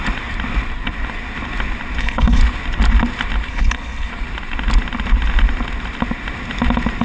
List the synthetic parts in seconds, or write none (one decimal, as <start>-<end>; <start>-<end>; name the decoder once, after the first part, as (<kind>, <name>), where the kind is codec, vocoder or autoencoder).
2.0-2.4 (codec, HILCodec); 3.5-4.1